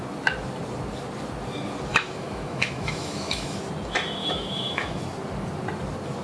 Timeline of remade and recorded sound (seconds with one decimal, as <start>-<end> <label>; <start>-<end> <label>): 0.0-1.9 recorded; 1.9-3.6 remade; 3.6-4.2 recorded; 4.2-5.0 remade; 5.0-6.2 recorded